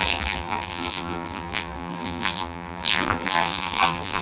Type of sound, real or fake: fake